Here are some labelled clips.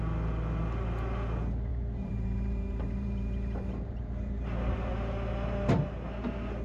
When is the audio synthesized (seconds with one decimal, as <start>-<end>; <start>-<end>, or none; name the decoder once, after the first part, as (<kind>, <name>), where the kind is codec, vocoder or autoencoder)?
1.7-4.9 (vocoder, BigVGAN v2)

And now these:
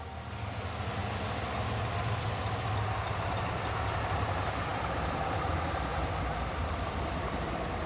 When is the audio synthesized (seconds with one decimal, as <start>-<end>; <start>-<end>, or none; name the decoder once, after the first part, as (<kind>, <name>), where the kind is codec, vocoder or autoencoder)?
4.7-5.5 (vocoder, BigVGAN v2); 5.9-7.3

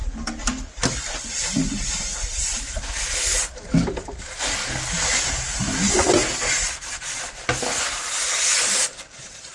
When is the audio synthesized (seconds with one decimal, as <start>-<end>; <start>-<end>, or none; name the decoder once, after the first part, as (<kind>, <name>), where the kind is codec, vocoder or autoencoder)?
6.6-7.3 (vocoder, BigVGAN v2); 8.3-9.5

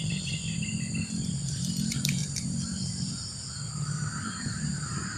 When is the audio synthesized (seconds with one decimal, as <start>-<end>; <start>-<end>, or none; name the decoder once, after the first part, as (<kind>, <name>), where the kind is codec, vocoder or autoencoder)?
0.0-0.4 (vocoder, BigVGAN v2); 1.8-5.2